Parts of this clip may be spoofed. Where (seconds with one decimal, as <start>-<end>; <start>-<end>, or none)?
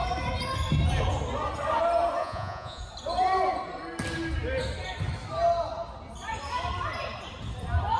2.2-2.8